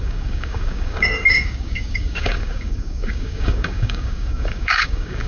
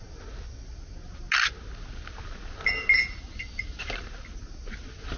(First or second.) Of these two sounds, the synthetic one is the first